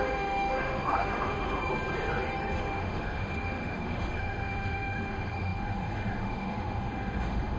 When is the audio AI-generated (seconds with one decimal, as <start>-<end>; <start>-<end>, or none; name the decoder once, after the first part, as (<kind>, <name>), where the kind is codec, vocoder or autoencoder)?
0.0-1.6 (autoencoder, DAC-VAE); 2.6-7.6